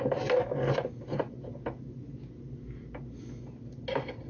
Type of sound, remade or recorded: recorded